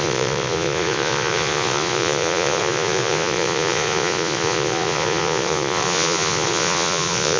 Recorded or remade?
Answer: remade